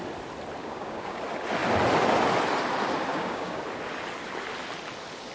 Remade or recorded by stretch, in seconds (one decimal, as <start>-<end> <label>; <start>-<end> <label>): 0.0-0.6 recorded; 0.6-1.2 remade; 1.2-3.1 recorded; 3.1-3.6 remade; 3.6-5.3 recorded